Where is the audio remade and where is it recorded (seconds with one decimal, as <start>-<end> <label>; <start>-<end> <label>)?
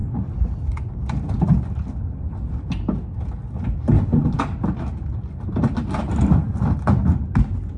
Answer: 0.0-7.8 recorded